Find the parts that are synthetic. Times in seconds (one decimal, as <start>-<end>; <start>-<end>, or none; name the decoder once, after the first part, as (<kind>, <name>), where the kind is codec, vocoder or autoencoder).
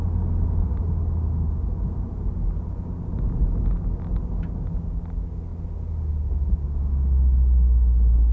none